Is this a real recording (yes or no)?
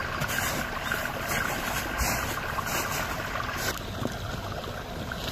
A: yes